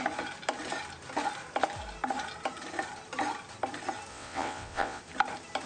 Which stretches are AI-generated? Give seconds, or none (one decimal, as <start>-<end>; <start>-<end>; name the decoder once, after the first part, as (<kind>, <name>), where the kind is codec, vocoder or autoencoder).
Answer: 4.1-5.0 (vocoder, WaveNeXt)